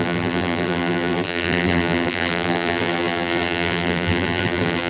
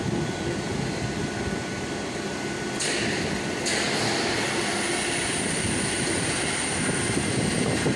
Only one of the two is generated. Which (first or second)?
first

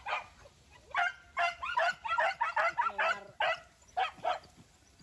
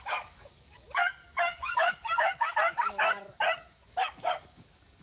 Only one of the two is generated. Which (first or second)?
second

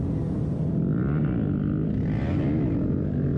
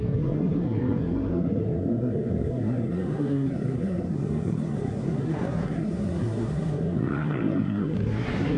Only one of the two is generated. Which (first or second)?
second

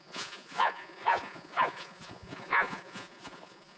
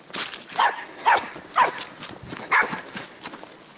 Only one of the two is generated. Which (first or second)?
first